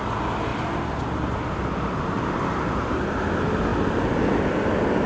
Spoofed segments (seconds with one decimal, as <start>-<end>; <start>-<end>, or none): none